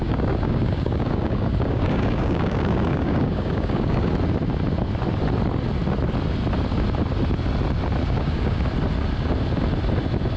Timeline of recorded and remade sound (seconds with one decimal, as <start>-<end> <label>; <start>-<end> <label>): 0.0-4.1 remade; 4.1-8.0 recorded; 8.0-8.6 remade; 8.6-10.4 recorded